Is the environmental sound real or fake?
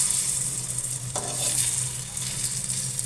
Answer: real